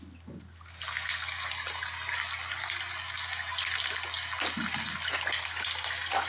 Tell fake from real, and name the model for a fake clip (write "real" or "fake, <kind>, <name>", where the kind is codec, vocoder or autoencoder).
real